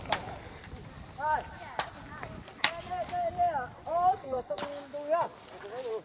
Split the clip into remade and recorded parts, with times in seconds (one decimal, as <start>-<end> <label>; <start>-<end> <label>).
0.0-4.1 recorded; 4.1-4.6 remade; 4.6-6.0 recorded